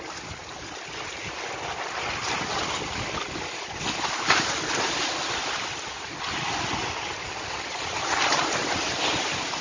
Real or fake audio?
real